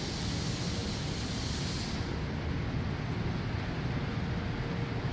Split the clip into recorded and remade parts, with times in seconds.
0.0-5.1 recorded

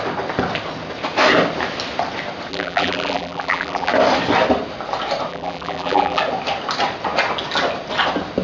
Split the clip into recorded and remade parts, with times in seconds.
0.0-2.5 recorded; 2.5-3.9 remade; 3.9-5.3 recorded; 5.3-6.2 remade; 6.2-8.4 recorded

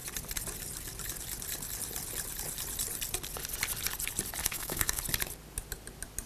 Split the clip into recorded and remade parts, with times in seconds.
0.0-4.4 recorded; 4.4-5.0 remade; 5.0-6.3 recorded

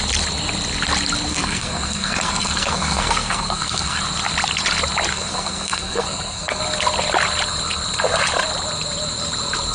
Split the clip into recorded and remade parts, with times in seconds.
0.0-1.3 recorded; 1.3-4.0 remade; 4.0-5.1 recorded; 5.1-6.6 remade; 6.6-9.7 recorded